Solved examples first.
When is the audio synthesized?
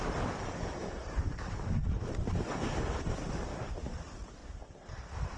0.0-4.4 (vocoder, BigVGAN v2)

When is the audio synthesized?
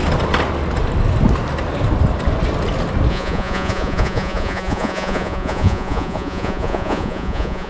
3.1-7.7 (vocoder, Vocos)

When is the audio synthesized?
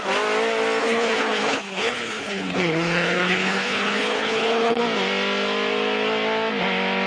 0.8-4.8 (codec, HILCodec)